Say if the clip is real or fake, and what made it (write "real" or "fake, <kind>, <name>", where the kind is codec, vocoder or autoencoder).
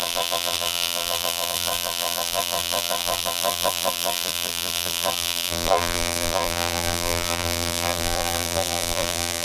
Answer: fake, vocoder, BigVGAN v2